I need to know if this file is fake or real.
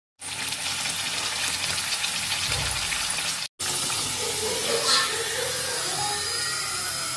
real